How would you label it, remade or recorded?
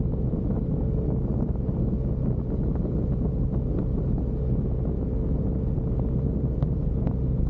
recorded